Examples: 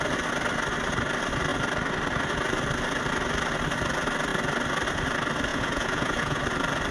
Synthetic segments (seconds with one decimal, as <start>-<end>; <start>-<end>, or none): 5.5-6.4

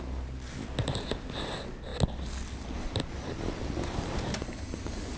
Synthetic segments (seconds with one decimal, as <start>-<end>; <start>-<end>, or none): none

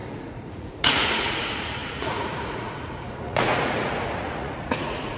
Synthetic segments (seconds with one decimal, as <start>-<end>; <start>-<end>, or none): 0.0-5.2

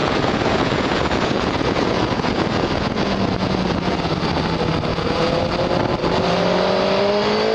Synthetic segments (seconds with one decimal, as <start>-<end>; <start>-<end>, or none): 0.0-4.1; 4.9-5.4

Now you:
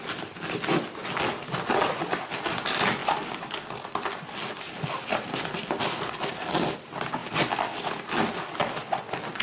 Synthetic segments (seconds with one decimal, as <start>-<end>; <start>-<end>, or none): none